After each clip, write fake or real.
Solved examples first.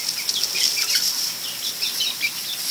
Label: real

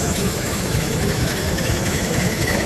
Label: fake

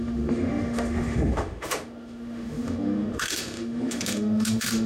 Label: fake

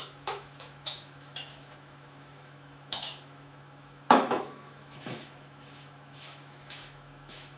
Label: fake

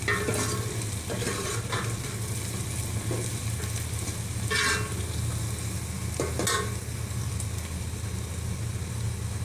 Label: real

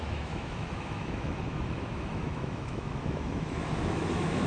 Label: fake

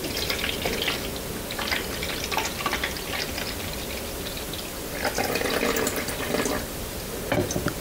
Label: real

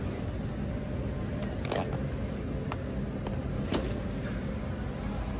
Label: real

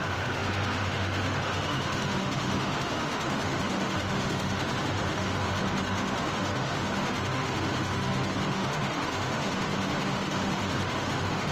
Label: fake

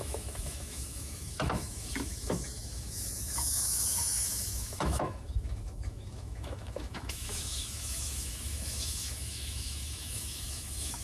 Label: fake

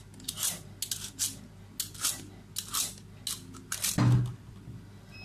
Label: real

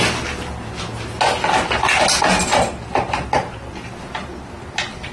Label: real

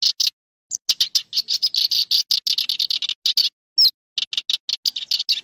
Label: real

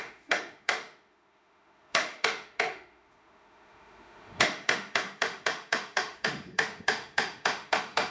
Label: fake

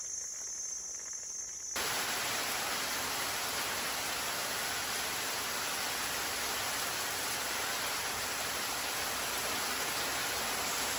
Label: real